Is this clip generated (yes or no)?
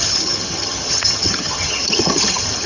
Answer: yes